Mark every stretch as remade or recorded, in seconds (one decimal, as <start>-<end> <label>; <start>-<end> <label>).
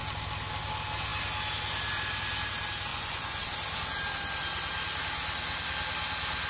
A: 0.0-2.9 recorded; 2.9-3.4 remade; 3.4-6.5 recorded